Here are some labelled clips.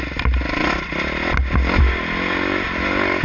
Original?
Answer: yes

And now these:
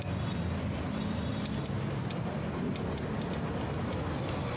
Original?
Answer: yes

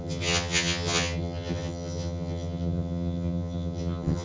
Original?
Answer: no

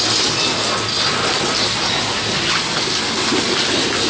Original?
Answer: yes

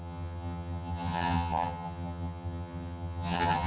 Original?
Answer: no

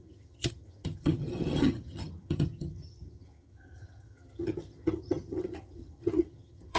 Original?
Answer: no